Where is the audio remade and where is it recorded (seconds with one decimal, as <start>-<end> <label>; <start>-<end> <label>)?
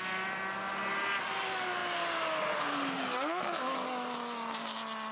0.0-5.1 recorded